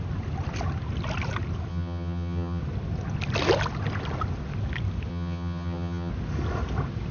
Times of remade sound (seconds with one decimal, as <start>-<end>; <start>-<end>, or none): 1.7-2.6; 5.1-6.1